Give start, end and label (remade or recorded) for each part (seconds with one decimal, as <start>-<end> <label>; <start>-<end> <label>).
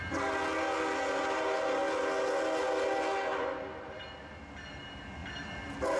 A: 0.0-6.0 recorded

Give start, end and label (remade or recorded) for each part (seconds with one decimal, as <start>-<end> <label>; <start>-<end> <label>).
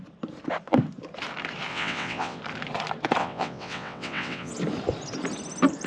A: 0.0-1.7 recorded; 1.7-2.4 remade; 2.4-3.2 recorded; 3.2-4.5 remade; 4.5-5.9 recorded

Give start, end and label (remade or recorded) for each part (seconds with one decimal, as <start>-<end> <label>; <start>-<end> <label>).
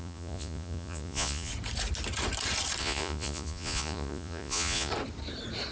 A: 0.0-1.5 remade; 1.5-2.8 recorded; 2.8-4.9 remade; 4.9-5.7 recorded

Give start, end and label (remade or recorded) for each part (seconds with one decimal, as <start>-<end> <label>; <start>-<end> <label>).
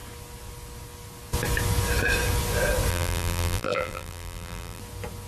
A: 0.0-2.9 recorded; 2.9-4.8 remade; 4.8-5.3 recorded